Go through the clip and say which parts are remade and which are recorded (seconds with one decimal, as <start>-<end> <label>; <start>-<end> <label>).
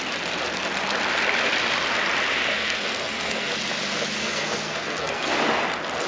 0.0-2.5 recorded; 2.5-3.5 remade; 3.5-4.2 recorded; 4.2-5.3 remade; 5.3-6.1 recorded